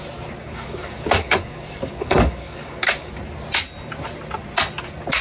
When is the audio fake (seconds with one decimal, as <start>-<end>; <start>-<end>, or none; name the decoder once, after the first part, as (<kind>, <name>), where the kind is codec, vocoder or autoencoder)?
0.4-3.1 (codec, DAC)